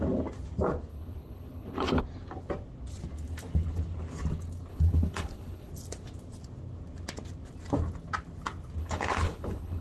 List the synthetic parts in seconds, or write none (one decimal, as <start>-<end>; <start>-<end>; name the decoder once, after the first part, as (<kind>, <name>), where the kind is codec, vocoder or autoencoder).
0.9-2.0 (codec, HILCodec); 4.7-5.7; 8.8-9.8